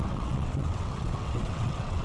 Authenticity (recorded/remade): remade